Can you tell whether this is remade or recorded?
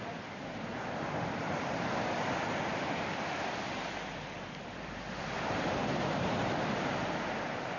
remade